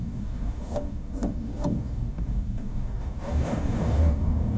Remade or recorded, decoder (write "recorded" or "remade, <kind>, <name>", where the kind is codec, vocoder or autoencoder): remade, codec, DAC